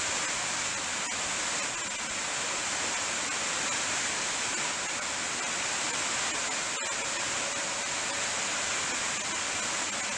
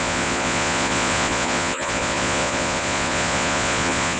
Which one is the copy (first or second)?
second